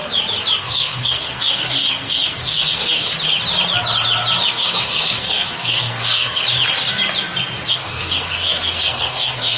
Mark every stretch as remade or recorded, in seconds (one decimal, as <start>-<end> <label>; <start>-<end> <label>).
0.0-0.6 recorded; 0.6-3.1 remade; 3.1-4.5 recorded; 4.5-6.4 remade; 6.4-7.7 recorded; 7.7-9.6 remade